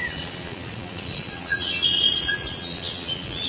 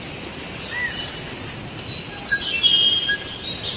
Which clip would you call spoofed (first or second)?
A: first